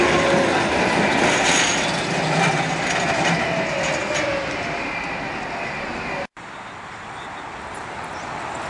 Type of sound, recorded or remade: recorded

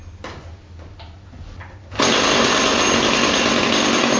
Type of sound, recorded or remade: recorded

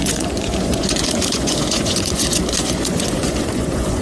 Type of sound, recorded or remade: remade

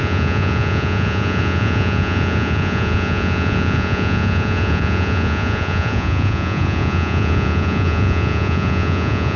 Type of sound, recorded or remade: remade